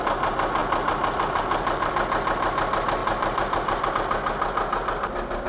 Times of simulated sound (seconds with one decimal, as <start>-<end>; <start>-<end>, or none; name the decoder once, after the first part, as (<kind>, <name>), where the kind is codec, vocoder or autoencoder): 3.0-3.9 (vocoder, BigVGAN v2)